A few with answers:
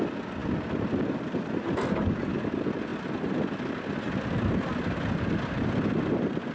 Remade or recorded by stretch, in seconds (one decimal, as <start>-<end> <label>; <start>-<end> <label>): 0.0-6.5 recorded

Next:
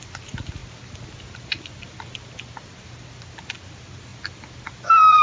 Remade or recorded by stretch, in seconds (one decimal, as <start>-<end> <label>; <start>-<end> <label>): 0.0-5.2 recorded

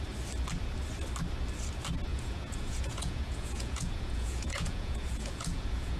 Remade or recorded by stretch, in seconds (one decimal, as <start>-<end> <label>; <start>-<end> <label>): 0.0-2.1 recorded; 2.1-6.0 remade

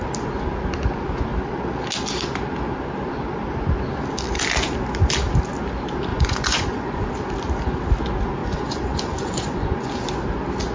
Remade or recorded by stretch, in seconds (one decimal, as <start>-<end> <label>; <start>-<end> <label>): 0.0-6.1 recorded; 6.1-7.1 remade; 7.1-8.4 recorded; 8.4-9.9 remade; 9.9-10.7 recorded

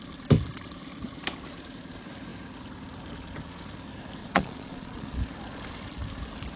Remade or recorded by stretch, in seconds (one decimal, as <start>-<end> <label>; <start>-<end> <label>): 0.0-4.2 recorded; 4.2-5.2 remade; 5.2-6.6 recorded

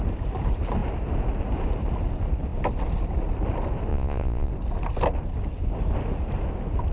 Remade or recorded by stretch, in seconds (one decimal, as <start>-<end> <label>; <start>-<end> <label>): 0.0-3.9 recorded; 3.9-4.5 remade; 4.5-6.9 recorded